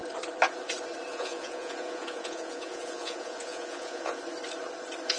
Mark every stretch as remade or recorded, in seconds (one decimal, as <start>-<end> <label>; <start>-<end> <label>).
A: 0.0-1.1 recorded; 1.1-4.2 remade; 4.2-5.2 recorded